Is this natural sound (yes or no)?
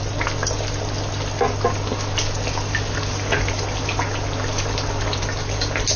yes